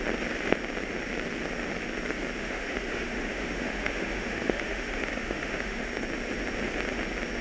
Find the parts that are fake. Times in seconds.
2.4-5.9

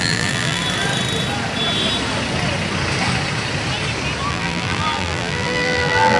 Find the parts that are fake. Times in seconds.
0.0-0.6; 4.3-6.2